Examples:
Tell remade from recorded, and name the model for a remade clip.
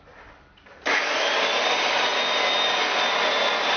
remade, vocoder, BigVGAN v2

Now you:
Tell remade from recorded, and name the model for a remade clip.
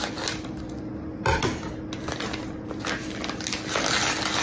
recorded